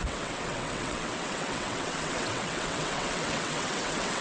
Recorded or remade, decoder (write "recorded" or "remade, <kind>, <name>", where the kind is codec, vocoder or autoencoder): remade, vocoder, WaveNeXt